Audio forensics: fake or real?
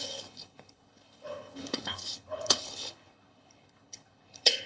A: fake